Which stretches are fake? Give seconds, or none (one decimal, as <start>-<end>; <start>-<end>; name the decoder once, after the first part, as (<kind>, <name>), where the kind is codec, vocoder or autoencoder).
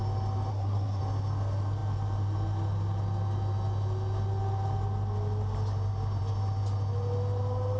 0.5-1.0 (codec, SNAC)